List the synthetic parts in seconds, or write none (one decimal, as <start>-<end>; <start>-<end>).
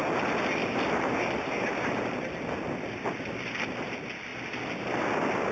0.6-1.7